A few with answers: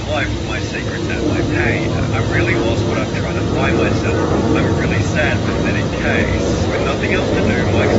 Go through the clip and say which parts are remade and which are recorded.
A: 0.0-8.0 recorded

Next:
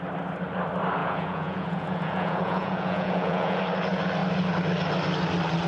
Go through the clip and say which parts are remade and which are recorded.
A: 0.0-1.0 recorded; 1.0-3.6 remade; 3.6-5.7 recorded